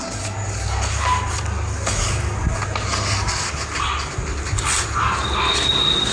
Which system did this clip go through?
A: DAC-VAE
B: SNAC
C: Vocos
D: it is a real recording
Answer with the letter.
D